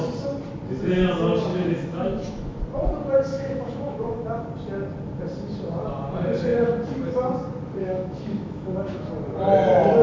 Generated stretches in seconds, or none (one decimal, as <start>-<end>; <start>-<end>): 1.5-2.6; 3.3-4.4; 7.8-9.1